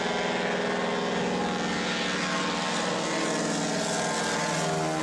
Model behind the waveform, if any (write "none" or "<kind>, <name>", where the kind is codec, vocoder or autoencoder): none